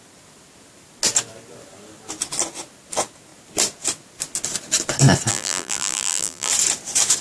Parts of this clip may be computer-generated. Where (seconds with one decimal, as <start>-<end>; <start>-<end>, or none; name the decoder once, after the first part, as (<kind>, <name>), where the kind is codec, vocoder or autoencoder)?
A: 5.3-6.5 (vocoder, BigVGAN v2)